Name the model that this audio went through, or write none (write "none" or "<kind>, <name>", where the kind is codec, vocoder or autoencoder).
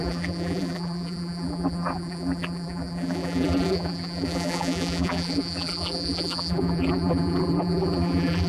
vocoder, BigVGAN v2